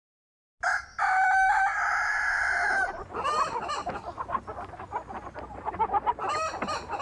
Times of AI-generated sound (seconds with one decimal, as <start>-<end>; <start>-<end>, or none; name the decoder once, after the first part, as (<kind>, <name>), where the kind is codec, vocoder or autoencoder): none